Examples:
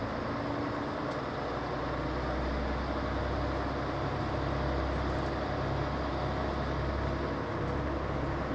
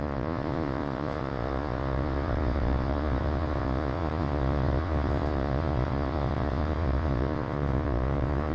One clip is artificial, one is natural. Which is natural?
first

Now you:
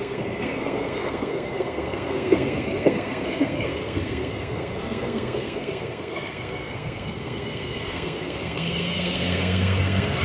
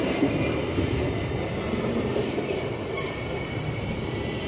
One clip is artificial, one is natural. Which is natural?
second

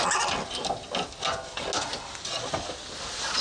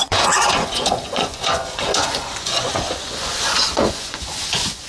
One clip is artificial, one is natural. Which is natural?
first